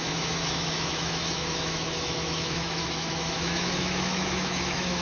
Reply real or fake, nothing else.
fake